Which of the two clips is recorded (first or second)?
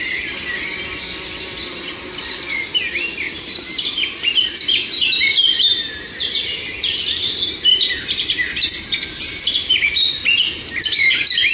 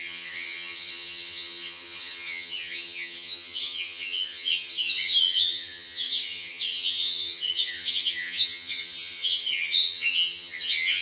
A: first